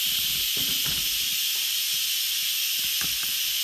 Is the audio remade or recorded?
recorded